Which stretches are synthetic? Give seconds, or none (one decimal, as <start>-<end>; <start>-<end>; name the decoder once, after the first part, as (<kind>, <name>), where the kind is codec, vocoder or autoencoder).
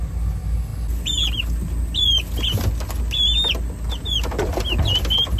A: none